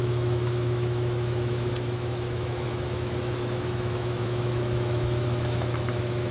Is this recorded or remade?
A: remade